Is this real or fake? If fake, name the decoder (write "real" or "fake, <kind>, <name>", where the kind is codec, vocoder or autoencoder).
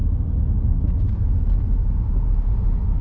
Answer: real